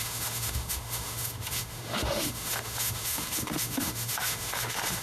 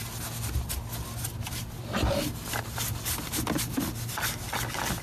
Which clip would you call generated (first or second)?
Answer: first